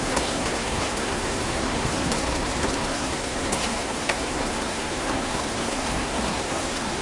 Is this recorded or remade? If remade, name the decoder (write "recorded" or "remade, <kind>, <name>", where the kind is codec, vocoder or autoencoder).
remade, codec, SNAC